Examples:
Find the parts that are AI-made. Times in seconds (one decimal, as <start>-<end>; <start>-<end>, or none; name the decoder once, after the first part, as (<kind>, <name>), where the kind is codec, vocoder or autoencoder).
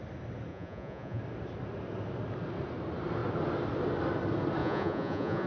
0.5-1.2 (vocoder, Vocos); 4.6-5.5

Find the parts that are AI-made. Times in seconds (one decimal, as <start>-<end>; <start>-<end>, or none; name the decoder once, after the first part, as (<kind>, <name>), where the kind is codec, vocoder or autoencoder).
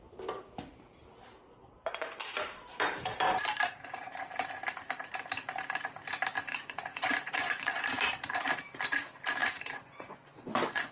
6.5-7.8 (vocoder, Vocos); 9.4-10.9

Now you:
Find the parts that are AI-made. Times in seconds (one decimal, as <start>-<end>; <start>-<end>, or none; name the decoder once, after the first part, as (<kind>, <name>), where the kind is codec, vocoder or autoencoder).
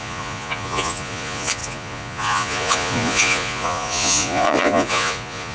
0.0-5.5 (vocoder, Vocos)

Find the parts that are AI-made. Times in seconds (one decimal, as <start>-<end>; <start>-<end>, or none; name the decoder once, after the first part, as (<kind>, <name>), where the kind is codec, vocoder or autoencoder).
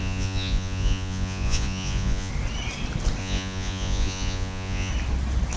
0.0-2.3 (vocoder, Vocos); 3.2-4.9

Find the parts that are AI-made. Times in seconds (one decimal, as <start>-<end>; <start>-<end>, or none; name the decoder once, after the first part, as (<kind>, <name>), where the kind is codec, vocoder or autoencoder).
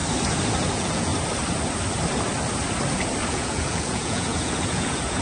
0.7-1.1 (vocoder, Vocos); 3.3-5.2